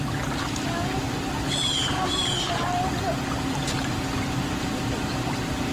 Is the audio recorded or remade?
recorded